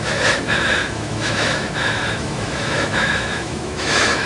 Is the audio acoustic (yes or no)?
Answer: no